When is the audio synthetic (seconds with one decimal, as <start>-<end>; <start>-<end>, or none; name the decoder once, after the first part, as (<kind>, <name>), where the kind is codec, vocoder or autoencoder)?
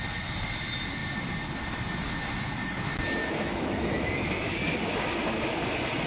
3.2-4.6 (autoencoder, DAC-VAE)